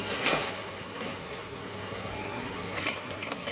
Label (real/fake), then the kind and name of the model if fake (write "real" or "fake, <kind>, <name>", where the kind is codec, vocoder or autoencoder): fake, codec, SNAC